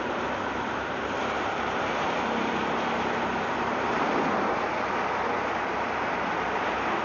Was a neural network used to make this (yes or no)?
yes